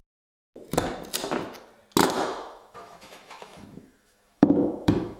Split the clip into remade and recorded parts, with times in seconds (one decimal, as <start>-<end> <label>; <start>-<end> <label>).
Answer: 0.0-2.0 recorded; 2.0-5.2 remade